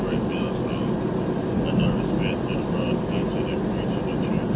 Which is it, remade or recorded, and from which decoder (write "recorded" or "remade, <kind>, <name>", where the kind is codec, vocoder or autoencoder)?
recorded